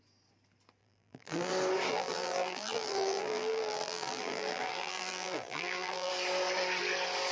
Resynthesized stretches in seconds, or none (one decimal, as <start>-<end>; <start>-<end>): 0.8-1.5; 1.9-6.1